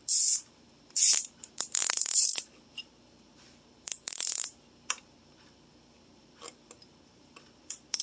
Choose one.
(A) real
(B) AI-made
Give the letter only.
B